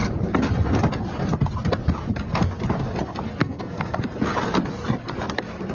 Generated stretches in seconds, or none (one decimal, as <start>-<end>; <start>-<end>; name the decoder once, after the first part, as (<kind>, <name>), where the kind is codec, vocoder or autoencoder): 3.4-4.0 (codec, SNAC)

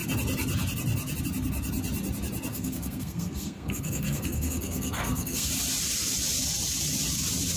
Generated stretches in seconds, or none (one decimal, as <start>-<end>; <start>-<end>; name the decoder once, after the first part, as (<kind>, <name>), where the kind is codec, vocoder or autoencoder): 2.5-5.5 (codec, SNAC)